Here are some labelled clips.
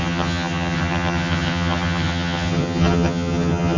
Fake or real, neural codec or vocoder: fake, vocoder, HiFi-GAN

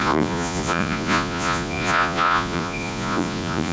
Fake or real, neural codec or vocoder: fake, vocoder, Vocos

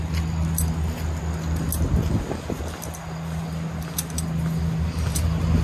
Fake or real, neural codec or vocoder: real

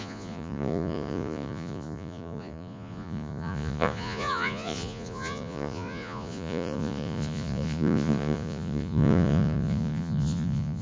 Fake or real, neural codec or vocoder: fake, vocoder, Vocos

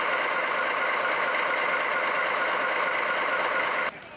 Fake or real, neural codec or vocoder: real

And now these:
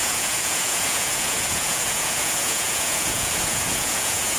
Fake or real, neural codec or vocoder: fake, vocoder, Vocos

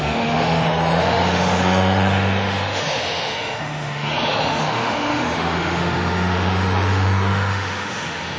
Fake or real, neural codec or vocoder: fake, autoencoder, DAC-VAE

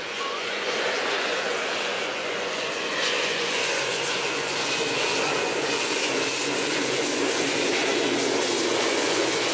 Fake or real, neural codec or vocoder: fake, vocoder, Vocos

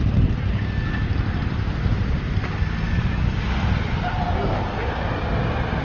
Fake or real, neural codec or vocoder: real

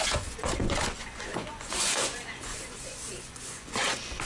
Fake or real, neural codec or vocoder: fake, vocoder, Vocos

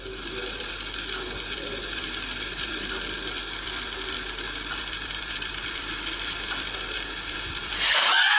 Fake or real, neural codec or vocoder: fake, vocoder, BigVGAN v2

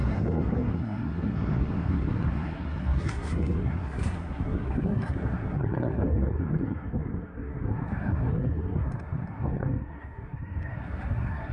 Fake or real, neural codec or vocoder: fake, codec, SNAC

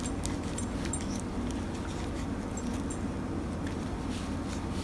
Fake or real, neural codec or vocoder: real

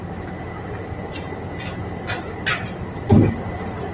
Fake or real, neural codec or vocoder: real